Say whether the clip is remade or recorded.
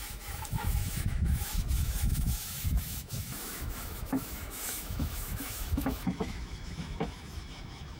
remade